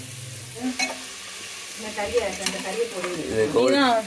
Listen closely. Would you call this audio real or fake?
real